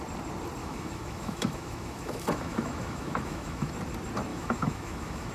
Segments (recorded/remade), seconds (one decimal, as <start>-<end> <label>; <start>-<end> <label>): 0.0-0.6 recorded; 0.6-3.7 remade; 3.7-4.3 recorded; 4.3-5.3 remade